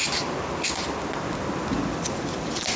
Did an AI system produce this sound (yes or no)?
no